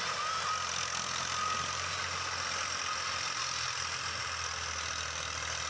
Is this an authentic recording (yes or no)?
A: yes